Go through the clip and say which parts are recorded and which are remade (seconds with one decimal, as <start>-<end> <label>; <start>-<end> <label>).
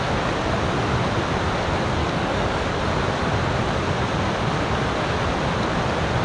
0.0-2.0 recorded; 2.0-2.8 remade; 2.8-6.2 recorded